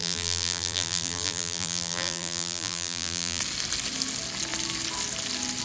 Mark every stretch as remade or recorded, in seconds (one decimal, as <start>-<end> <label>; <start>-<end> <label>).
0.0-3.4 remade; 3.4-5.6 recorded